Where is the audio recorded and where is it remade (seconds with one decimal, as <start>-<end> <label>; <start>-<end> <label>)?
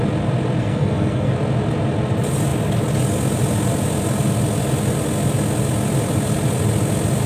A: 0.0-0.6 recorded; 0.6-1.3 remade; 1.3-7.3 recorded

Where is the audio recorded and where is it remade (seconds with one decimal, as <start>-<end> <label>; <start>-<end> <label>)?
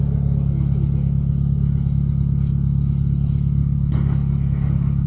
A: 0.0-3.6 recorded; 3.6-5.1 remade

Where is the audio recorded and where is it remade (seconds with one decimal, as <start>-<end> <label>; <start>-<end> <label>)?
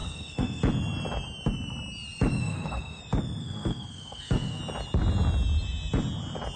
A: 0.0-0.6 remade; 0.6-2.4 recorded; 2.4-3.0 remade; 3.0-3.4 recorded; 3.4-4.6 remade; 4.6-6.6 recorded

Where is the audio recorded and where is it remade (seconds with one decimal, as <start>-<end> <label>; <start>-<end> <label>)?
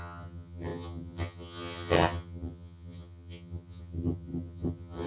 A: 0.0-5.1 remade